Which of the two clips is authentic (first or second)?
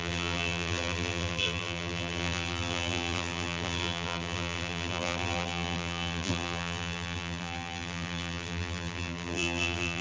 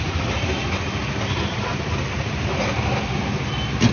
second